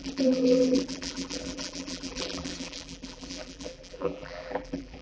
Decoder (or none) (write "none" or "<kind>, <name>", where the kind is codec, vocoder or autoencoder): vocoder, BigVGAN v2